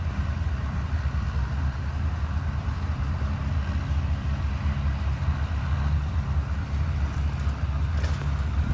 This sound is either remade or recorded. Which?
recorded